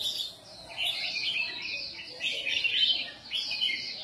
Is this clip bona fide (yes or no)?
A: yes